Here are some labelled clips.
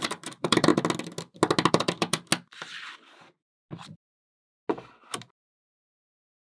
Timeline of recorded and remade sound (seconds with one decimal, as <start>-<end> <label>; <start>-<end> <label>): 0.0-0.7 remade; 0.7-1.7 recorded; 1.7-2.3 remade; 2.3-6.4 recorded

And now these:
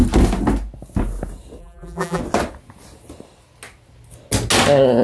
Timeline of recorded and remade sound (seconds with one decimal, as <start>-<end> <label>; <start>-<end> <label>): 0.0-1.6 recorded; 1.6-2.2 remade; 2.2-5.0 recorded

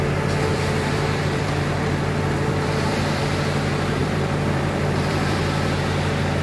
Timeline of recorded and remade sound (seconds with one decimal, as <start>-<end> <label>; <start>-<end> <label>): 0.0-0.5 recorded; 0.5-3.2 remade; 3.2-4.0 recorded; 4.0-5.4 remade; 5.4-6.4 recorded

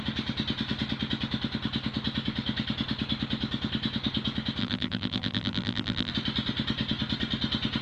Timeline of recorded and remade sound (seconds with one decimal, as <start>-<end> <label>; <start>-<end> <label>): 0.0-4.6 recorded; 4.6-6.1 remade; 6.1-7.8 recorded

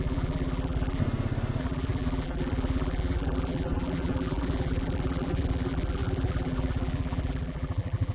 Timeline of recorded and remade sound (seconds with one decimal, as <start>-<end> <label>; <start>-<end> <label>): 0.0-1.0 remade; 1.0-1.6 recorded; 1.6-8.1 remade

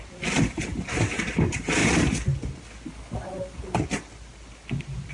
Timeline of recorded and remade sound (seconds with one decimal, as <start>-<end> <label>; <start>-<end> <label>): 0.0-1.8 remade; 1.8-5.1 recorded

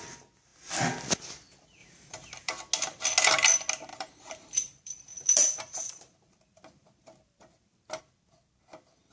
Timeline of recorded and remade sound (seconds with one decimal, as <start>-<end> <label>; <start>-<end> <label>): 0.0-1.8 recorded; 1.8-2.5 remade; 2.5-3.9 recorded; 3.9-8.0 remade; 8.0-9.1 recorded